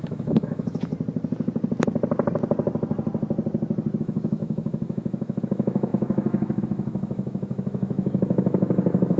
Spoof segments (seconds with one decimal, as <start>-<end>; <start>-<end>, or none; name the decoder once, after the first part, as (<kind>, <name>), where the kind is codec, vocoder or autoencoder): 0.0-0.9 (autoencoder, DAC-VAE); 4.0-9.2